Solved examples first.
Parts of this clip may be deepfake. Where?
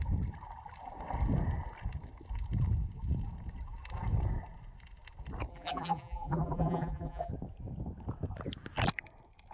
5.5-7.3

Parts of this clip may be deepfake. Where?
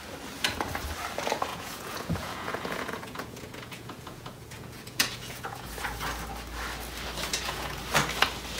1.5-5.7; 7.3-7.8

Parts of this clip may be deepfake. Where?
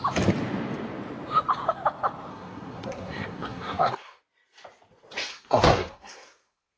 2.3-4.2; 5.3-6.8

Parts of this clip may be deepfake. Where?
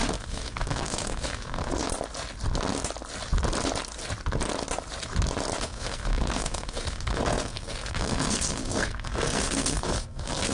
0.0-1.8; 5.6-10.5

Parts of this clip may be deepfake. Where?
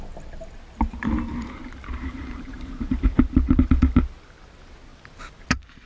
2.0-3.2; 4.9-5.9